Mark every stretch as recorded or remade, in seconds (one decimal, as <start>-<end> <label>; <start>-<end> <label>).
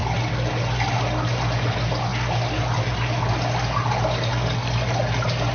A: 0.0-5.5 recorded